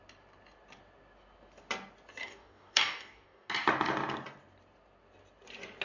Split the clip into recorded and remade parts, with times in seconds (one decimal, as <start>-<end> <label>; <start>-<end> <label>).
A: 0.0-2.2 recorded; 2.2-3.5 remade; 3.5-5.8 recorded

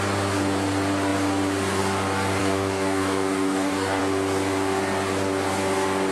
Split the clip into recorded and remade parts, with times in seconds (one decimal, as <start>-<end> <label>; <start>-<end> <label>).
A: 0.0-2.4 recorded; 2.4-4.0 remade; 4.0-6.1 recorded